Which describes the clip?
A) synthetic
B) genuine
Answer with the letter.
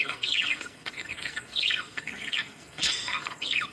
A